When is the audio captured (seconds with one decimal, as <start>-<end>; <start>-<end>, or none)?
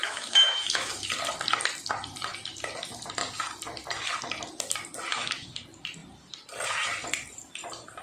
1.1-5.1; 5.6-8.0